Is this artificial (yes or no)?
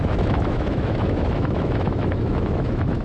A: yes